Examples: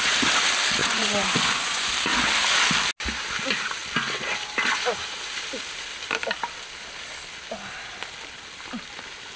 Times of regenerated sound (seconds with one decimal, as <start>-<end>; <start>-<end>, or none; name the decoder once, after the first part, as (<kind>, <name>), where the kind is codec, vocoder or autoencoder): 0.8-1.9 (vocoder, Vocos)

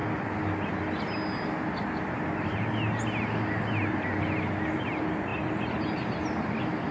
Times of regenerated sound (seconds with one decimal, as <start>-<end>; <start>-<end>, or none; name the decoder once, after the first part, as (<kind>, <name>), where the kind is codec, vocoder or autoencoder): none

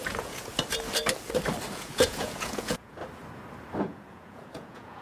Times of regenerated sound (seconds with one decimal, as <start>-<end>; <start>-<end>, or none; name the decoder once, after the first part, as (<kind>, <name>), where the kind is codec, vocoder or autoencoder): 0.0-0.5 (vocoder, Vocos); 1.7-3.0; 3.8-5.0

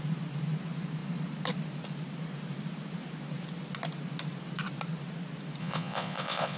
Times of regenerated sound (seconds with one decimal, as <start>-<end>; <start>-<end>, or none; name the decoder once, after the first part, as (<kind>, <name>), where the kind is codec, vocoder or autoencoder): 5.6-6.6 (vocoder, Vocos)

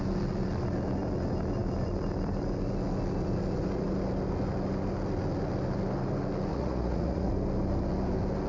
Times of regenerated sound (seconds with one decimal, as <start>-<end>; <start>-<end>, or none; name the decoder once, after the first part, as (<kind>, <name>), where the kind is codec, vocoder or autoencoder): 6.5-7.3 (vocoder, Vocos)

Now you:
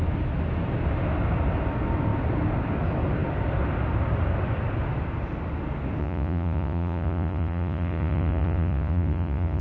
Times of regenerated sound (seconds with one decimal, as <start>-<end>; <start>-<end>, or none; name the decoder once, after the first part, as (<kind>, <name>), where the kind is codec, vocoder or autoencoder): 6.0-9.6 (vocoder, Vocos)